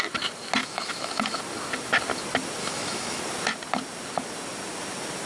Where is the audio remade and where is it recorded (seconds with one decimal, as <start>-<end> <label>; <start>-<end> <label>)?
0.0-0.6 recorded; 0.6-1.4 remade; 1.4-2.6 recorded; 2.6-3.2 remade; 3.2-5.3 recorded